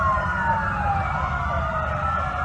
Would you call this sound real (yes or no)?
yes